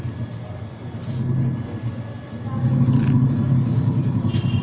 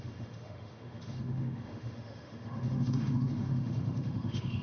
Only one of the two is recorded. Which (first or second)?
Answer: first